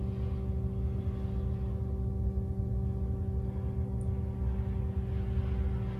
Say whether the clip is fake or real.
real